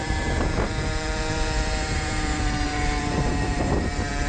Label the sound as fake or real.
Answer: fake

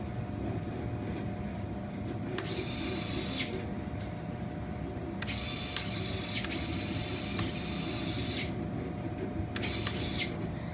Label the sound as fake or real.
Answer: real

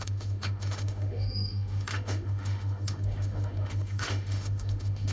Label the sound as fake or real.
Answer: fake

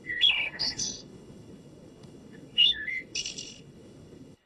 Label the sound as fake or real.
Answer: fake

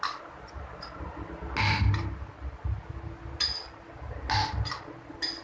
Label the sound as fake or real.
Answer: real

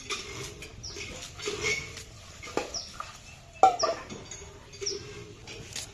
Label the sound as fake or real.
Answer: real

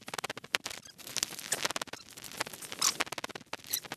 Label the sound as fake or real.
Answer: real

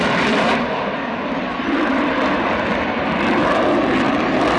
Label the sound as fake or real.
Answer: fake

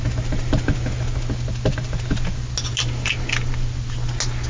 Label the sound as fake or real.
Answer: real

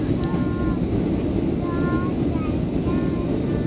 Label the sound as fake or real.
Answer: real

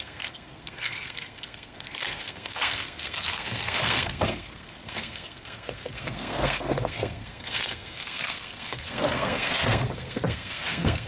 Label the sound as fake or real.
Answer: fake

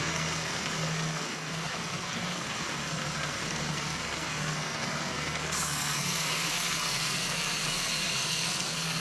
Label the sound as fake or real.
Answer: fake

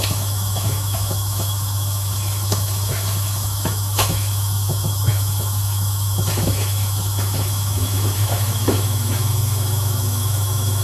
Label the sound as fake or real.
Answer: fake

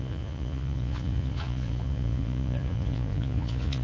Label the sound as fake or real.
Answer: fake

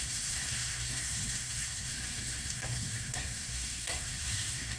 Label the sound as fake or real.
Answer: fake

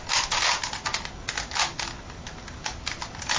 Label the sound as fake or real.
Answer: real